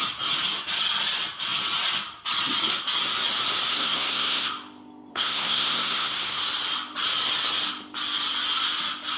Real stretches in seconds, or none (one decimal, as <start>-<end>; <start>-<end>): 0.0-3.7; 4.5-5.1; 6.4-9.2